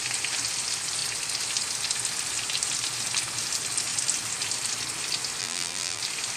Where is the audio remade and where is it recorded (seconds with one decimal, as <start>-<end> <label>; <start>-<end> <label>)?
0.0-5.4 recorded; 5.4-6.0 remade; 6.0-6.4 recorded